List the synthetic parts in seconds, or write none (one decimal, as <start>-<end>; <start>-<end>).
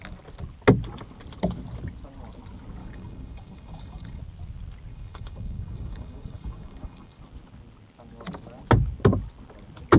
2.8-4.2; 4.9-7.2